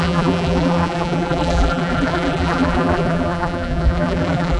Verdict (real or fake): fake